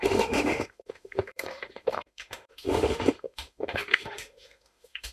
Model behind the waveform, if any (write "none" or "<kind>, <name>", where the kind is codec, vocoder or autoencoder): autoencoder, DAC-VAE